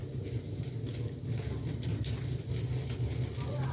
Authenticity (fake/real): real